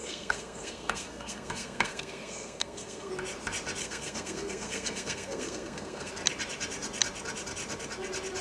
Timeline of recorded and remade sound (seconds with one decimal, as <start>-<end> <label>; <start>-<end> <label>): 0.0-3.1 remade; 3.1-3.8 recorded; 3.8-6.1 remade; 6.1-8.4 recorded